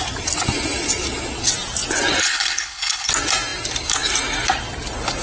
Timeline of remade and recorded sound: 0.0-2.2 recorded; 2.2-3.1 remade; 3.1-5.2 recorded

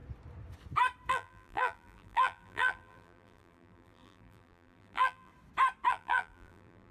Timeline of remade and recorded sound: 0.0-1.1 recorded; 1.1-5.3 remade; 5.3-5.9 recorded; 5.9-6.9 remade